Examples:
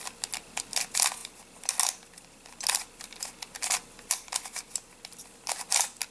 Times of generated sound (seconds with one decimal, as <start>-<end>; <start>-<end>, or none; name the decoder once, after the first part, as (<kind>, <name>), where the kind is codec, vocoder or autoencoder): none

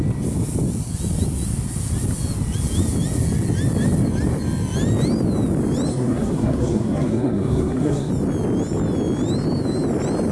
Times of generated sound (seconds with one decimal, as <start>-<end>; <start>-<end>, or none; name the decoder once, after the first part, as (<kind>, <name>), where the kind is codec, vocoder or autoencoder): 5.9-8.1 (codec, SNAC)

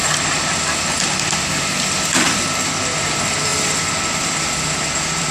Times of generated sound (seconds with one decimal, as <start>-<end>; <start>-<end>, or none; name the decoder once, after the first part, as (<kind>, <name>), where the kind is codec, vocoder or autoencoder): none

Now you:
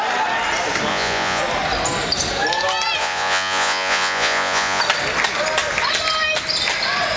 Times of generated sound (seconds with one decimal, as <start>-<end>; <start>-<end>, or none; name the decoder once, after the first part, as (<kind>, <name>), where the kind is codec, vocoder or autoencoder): 0.9-1.4 (vocoder, Vocos); 3.0-4.8